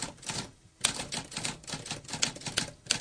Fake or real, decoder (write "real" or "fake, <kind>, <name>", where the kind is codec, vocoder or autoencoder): real